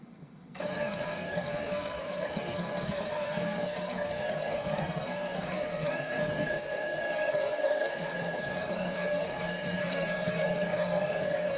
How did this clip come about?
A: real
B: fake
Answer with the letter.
B